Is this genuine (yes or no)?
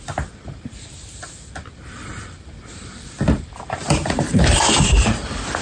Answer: no